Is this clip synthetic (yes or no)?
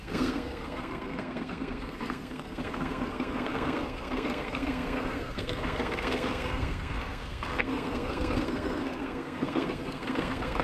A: yes